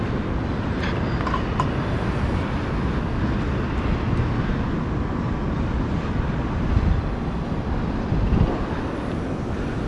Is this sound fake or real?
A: real